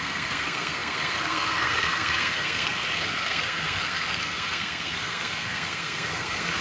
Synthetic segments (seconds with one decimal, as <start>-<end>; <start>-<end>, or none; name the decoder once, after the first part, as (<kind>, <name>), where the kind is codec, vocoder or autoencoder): 0.0-6.6 (codec, SNAC)